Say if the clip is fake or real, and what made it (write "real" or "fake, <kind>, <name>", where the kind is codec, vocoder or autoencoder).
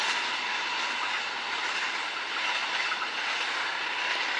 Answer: real